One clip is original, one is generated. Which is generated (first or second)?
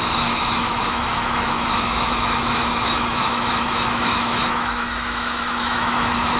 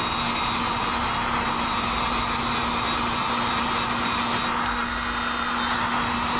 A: first